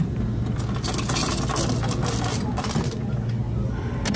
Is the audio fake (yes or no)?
no